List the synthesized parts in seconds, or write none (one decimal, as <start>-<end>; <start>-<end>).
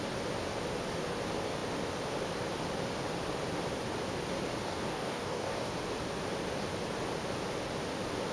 4.7-5.7